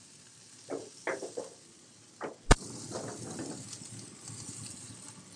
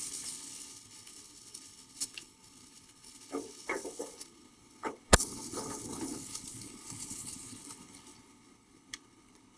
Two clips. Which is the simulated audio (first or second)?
second